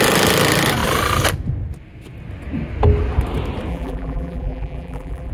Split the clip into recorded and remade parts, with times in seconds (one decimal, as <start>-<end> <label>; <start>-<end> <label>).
0.0-3.7 recorded; 3.7-5.3 remade